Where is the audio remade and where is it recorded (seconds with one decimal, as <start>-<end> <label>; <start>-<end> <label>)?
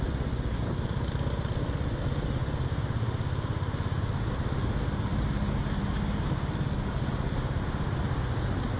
0.0-8.8 recorded